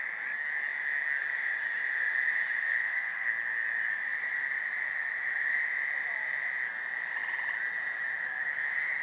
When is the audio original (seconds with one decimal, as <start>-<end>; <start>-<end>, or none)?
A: 0.0-2.6; 3.3-9.0